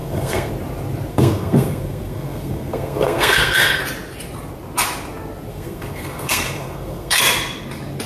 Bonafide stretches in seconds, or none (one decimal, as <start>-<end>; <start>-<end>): 0.5-1.1; 3.8-5.5; 7.2-8.1